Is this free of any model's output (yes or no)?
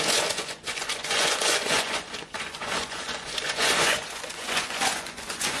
no